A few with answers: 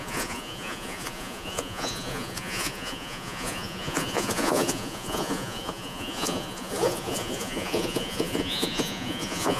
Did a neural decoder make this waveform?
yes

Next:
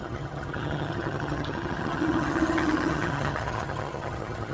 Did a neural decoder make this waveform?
yes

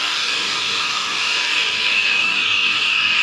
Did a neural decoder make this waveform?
yes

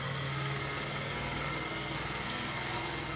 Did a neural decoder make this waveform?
yes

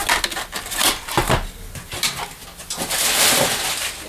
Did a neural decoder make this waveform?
no